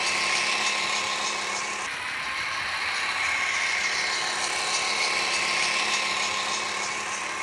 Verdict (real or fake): real